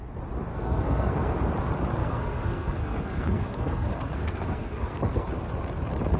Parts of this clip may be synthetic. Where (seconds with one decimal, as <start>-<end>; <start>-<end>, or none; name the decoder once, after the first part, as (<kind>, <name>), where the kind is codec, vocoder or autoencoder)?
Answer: 0.5-1.4 (codec, SNAC); 2.0-5.3